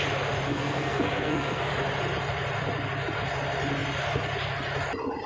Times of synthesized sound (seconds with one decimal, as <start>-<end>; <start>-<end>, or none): 0.5-1.7